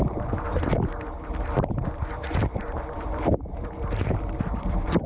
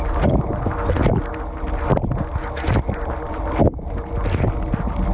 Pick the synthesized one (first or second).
first